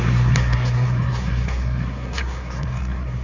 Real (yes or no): no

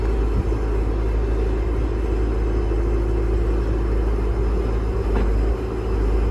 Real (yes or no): yes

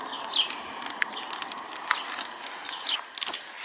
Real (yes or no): yes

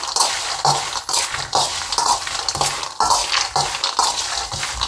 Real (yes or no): yes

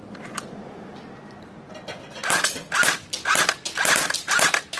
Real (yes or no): yes